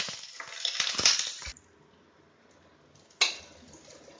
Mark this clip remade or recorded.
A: recorded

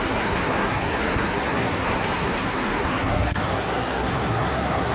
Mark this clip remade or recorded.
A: remade